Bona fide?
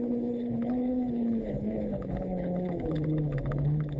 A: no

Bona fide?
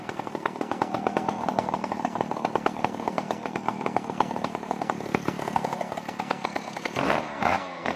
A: no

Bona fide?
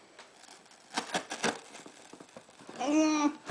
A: yes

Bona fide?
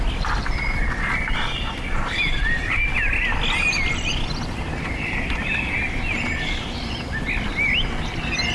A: yes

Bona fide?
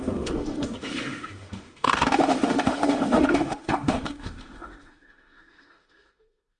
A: no